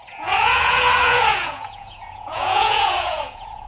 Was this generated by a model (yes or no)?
yes